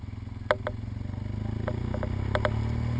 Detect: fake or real real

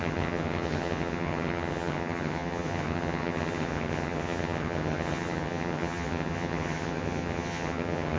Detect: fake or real fake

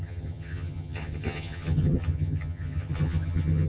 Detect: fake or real fake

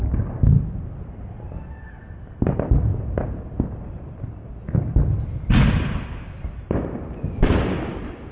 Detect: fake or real real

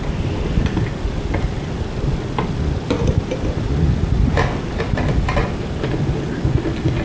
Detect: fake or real real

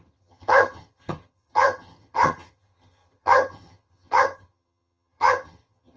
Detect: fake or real fake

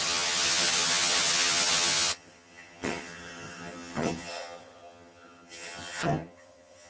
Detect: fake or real fake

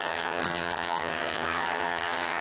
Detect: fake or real fake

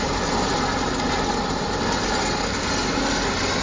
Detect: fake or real real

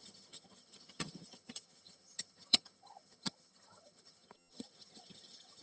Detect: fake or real fake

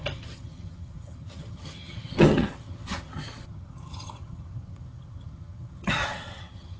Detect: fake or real fake